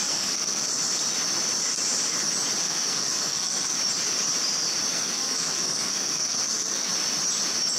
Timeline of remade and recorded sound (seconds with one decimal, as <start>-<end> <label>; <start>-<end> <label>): 0.0-0.7 remade; 0.7-2.6 recorded; 2.6-3.8 remade; 3.8-4.9 recorded; 4.9-6.9 remade; 6.9-7.8 recorded